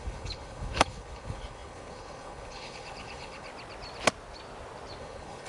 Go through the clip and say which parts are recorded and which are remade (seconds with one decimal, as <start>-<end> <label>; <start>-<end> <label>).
0.0-3.5 remade; 3.5-5.0 recorded; 5.0-5.5 remade